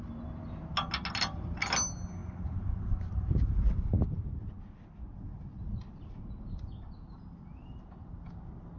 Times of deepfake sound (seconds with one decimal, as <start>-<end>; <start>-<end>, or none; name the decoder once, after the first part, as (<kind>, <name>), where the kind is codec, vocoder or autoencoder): 2.2-4.2 (vocoder, BigVGAN v2)